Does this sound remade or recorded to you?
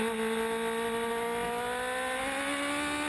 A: recorded